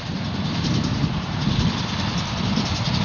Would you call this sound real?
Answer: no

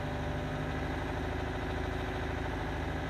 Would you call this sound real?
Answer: yes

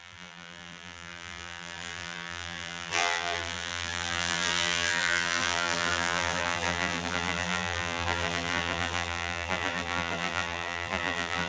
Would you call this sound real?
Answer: no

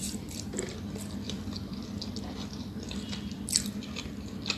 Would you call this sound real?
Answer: no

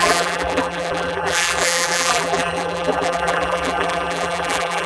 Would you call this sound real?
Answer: no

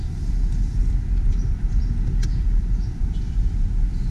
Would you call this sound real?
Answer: no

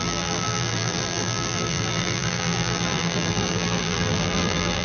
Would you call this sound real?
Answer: no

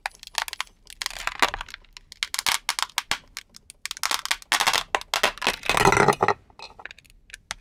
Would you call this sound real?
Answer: yes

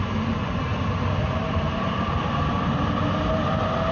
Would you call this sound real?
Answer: yes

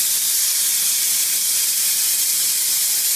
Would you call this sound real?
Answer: no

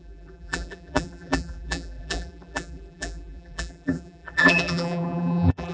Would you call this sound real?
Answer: no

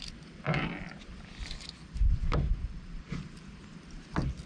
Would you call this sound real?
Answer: yes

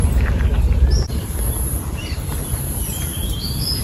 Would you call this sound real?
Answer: no